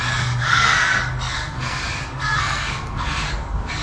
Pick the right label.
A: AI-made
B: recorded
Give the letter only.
A